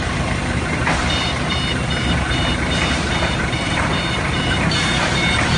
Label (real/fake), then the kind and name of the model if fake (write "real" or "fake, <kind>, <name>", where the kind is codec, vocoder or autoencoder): fake, vocoder, BigVGAN v2